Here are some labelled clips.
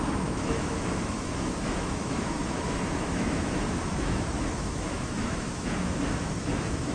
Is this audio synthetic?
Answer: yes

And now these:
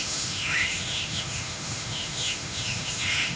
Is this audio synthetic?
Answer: yes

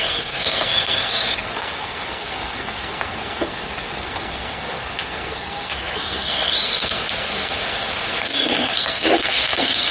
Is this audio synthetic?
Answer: yes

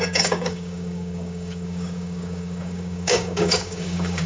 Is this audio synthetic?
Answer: yes